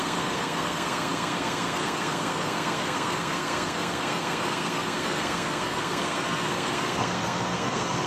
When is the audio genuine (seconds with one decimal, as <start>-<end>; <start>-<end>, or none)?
none